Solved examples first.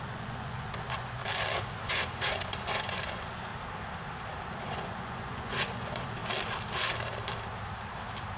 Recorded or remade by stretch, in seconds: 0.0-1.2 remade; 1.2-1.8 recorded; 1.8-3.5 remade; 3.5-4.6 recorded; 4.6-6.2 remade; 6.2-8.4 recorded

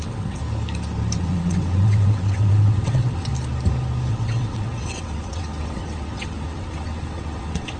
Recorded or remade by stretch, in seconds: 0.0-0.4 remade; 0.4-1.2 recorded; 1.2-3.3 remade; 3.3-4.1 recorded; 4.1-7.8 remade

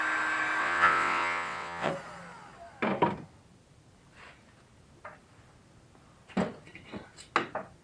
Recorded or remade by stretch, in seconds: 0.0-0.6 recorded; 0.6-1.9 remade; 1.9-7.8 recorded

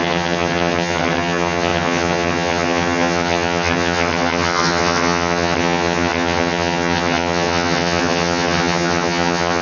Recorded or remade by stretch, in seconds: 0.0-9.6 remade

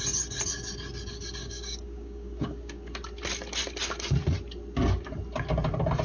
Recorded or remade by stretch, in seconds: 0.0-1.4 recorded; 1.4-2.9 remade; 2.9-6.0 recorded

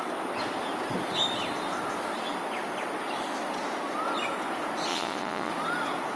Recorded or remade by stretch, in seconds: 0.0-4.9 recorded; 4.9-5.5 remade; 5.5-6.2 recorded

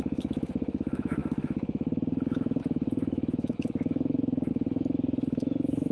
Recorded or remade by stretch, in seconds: 0.0-5.9 remade

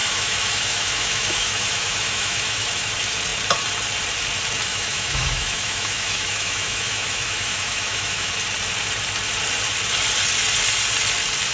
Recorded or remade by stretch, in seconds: 0.0-2.9 remade; 2.9-4.7 recorded; 4.7-8.3 remade; 8.3-11.5 recorded